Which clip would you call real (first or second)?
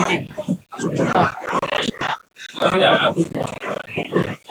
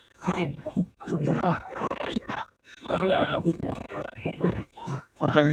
first